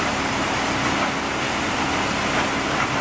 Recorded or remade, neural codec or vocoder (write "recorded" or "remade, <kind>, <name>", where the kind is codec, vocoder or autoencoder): recorded